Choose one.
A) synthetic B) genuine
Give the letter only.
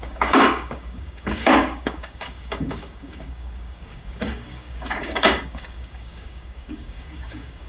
A